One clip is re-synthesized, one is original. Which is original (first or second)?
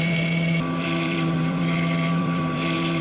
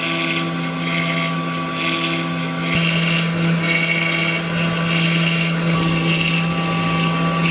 second